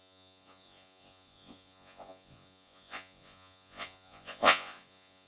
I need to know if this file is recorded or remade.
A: remade